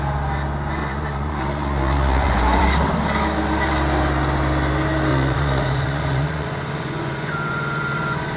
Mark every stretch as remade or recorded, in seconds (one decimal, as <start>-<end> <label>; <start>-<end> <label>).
0.0-0.8 recorded; 0.8-2.6 remade; 2.6-5.1 recorded; 5.1-8.4 remade